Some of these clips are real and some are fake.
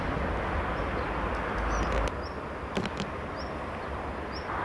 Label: real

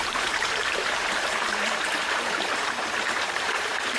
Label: fake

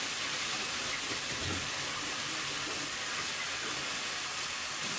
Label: real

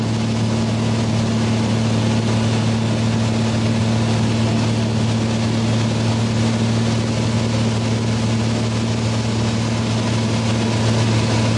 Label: real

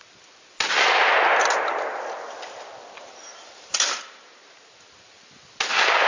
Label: real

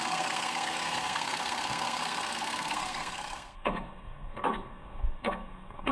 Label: fake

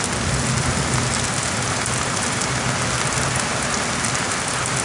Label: real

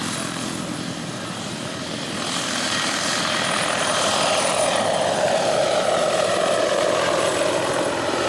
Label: fake